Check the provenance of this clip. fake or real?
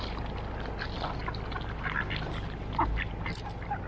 real